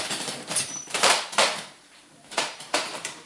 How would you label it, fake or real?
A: fake